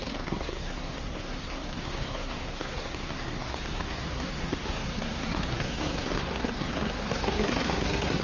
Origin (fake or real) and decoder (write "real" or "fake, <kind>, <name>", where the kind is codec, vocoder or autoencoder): fake, codec, SNAC